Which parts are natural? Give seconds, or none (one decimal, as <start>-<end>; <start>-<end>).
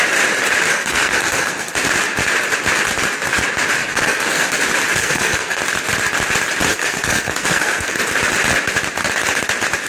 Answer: 0.0-0.7; 1.7-3.8; 4.6-5.0; 5.6-6.7; 8.0-9.9